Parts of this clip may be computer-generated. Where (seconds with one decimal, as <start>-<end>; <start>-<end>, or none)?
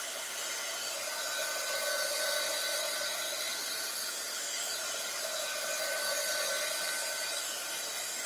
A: none